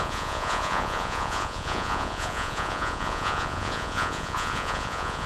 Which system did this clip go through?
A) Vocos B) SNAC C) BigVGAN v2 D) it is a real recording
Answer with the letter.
A